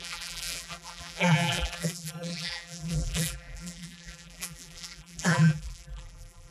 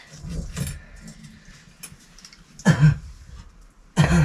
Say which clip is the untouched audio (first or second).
second